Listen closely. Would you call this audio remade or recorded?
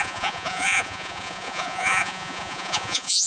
remade